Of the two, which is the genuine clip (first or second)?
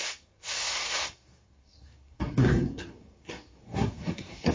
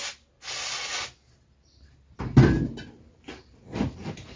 second